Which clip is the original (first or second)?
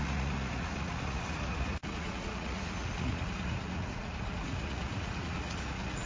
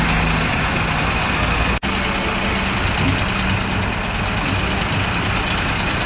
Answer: second